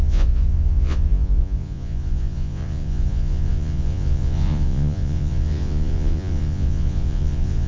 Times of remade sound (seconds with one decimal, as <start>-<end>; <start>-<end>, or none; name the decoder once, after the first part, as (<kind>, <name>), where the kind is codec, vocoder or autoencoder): 0.0-7.7 (vocoder, Vocos)